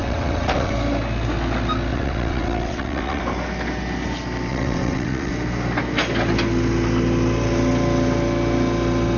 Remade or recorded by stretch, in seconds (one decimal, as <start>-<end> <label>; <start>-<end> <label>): 0.0-0.7 remade; 0.7-1.9 recorded; 1.9-3.2 remade; 3.2-4.5 recorded; 4.5-5.3 remade; 5.3-9.2 recorded